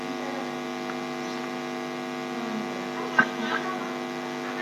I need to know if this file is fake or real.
real